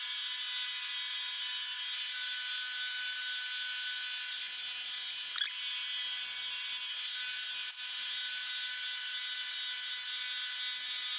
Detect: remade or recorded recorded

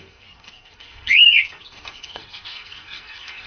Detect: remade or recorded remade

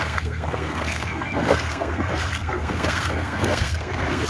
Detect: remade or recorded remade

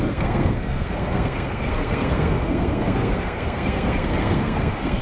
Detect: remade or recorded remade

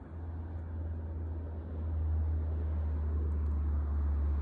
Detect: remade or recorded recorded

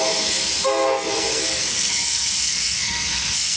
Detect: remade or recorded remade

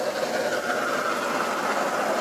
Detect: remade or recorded recorded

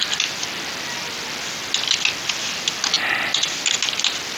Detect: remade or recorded recorded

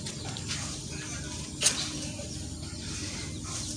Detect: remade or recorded recorded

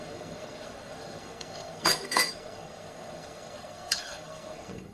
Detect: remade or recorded remade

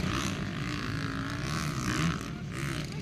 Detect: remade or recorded recorded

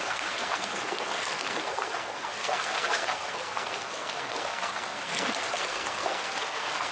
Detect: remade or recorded remade